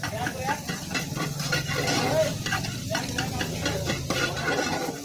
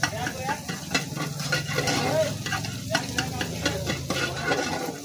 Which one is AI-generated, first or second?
first